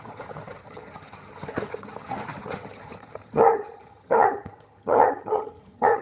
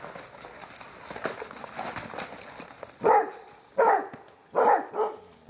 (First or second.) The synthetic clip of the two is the first